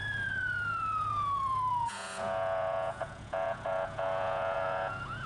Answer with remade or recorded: remade